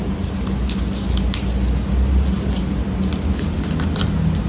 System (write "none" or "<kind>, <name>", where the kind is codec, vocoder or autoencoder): none